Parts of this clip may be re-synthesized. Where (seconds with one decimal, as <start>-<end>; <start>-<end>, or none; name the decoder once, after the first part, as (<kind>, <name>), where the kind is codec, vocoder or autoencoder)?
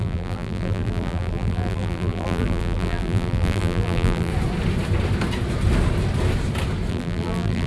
0.0-4.3 (vocoder, BigVGAN v2); 6.9-7.7